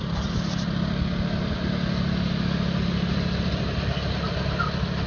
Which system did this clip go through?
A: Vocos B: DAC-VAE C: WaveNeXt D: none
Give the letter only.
D